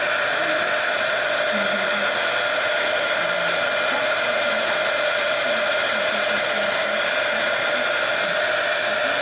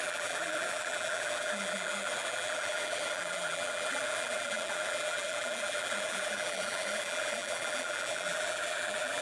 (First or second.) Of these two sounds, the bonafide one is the first